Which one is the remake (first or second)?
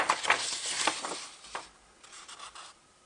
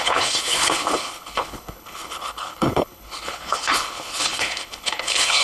second